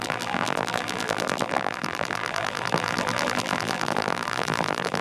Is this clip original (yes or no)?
no